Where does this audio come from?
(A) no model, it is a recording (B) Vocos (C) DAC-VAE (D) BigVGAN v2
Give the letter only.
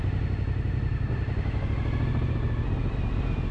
A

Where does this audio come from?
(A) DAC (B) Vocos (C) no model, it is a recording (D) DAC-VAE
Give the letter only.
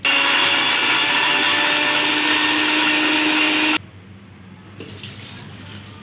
C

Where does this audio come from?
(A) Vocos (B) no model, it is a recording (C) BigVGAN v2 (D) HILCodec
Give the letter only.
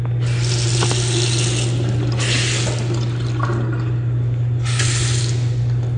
B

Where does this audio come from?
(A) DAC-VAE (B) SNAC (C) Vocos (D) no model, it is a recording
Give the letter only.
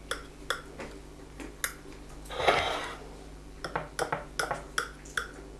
D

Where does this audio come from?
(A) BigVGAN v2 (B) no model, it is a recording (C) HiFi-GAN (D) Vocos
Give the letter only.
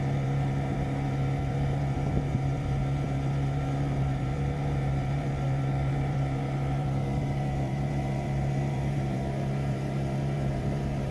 A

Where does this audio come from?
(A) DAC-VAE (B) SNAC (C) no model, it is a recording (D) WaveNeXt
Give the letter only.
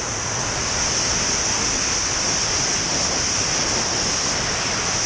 C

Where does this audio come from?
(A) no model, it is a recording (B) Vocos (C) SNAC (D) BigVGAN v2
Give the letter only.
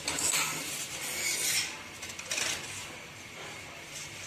A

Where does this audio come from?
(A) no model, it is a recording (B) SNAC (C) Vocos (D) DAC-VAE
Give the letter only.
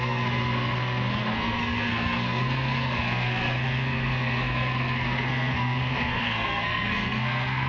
B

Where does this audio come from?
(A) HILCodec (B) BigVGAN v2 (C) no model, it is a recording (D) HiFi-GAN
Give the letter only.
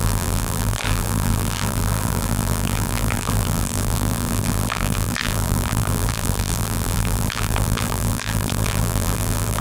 B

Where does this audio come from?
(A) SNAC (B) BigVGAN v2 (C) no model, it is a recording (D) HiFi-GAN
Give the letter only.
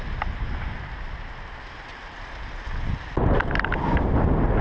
C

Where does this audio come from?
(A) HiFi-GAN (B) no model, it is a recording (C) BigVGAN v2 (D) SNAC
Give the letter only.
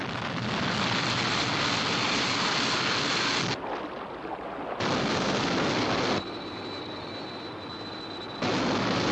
B